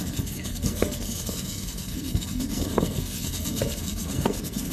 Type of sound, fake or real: fake